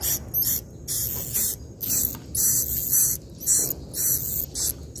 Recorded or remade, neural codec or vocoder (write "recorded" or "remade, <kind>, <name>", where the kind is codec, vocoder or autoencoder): recorded